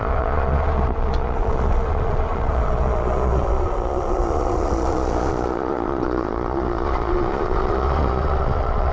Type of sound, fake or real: fake